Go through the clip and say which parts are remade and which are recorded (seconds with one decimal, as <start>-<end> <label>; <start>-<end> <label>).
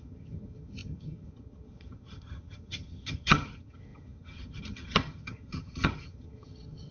0.0-6.9 remade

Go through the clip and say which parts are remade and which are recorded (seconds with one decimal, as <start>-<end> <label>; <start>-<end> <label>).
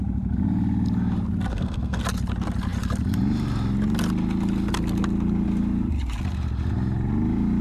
0.0-1.5 recorded; 1.5-2.0 remade; 2.0-7.6 recorded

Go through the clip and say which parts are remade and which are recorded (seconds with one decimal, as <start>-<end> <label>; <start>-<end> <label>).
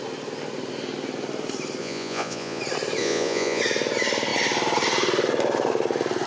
0.0-1.8 recorded; 1.8-2.6 remade; 2.6-3.0 recorded; 3.0-3.6 remade; 3.6-6.3 recorded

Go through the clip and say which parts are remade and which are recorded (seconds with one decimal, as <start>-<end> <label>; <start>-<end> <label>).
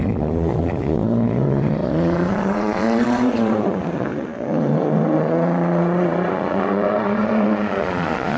0.0-8.4 remade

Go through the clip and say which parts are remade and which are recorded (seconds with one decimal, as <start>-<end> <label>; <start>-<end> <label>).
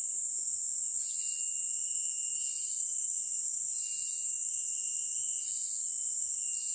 0.0-6.7 recorded